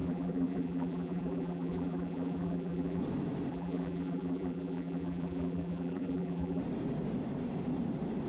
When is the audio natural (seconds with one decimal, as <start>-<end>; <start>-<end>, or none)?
3.0-3.5; 6.6-8.3